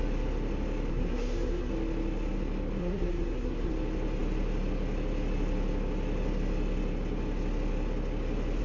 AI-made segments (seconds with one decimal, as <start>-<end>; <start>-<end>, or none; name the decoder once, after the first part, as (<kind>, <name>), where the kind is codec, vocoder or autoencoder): 0.9-1.7 (codec, SNAC); 2.8-3.7